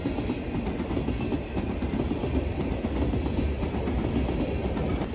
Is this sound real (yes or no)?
yes